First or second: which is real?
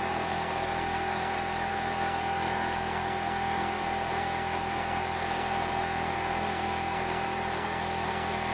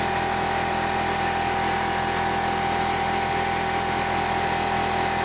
second